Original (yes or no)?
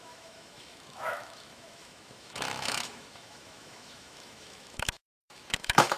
no